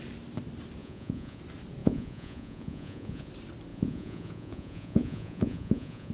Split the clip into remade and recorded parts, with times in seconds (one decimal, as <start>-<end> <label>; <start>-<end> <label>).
0.0-0.8 recorded; 0.8-1.4 remade; 1.4-1.8 recorded; 1.8-3.3 remade; 3.3-3.7 recorded; 3.7-6.1 remade